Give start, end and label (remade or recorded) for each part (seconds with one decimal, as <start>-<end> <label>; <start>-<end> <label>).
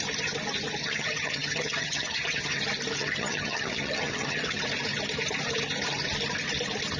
0.0-0.8 recorded; 0.8-2.6 remade; 2.6-3.0 recorded; 3.0-4.6 remade; 4.6-7.0 recorded